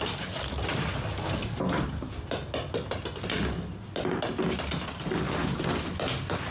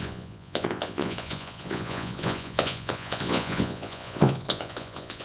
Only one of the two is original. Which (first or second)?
first